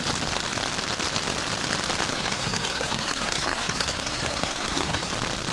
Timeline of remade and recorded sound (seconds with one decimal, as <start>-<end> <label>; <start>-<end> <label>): 0.0-2.1 recorded; 2.1-5.1 remade; 5.1-5.5 recorded